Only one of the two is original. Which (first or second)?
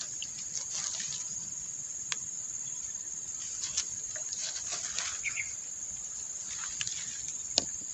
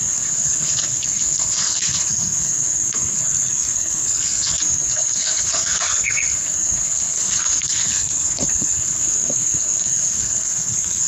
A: first